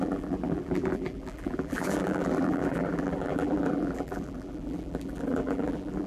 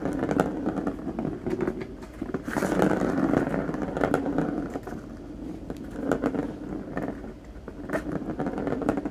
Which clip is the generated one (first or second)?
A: first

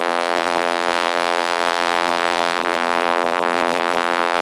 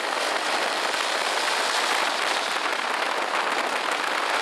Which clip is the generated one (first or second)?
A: first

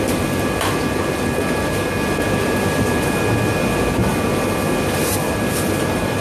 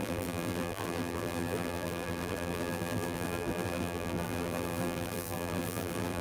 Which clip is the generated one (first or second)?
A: second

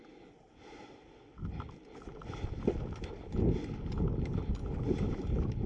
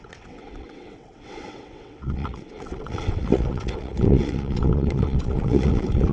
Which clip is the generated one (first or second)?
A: second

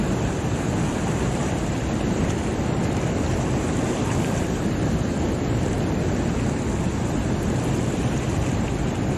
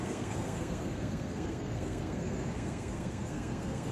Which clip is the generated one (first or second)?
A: second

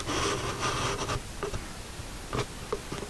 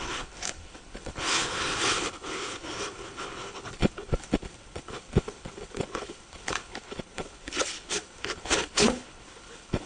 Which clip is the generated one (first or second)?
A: second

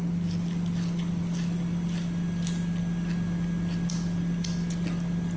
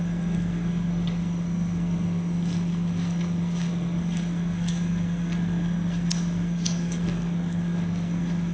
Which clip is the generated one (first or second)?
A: second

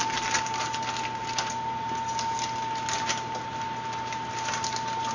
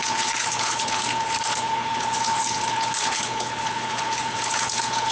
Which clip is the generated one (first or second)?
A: second